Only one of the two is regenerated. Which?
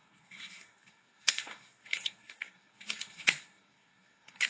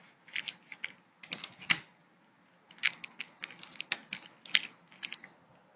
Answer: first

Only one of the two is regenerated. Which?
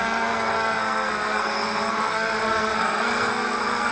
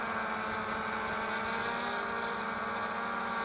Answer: first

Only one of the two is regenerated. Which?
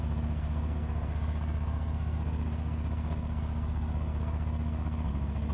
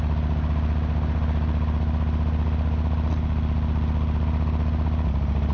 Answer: first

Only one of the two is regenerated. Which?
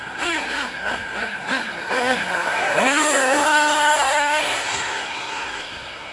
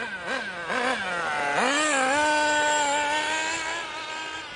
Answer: first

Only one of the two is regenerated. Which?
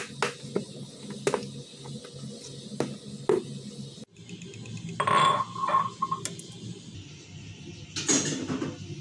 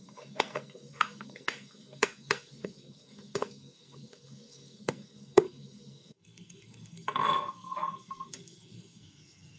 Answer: second